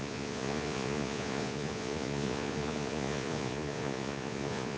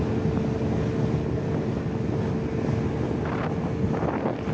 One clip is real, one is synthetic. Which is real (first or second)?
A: second